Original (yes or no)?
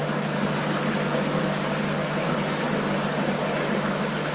yes